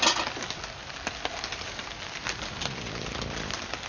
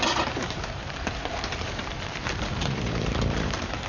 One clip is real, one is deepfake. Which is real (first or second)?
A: first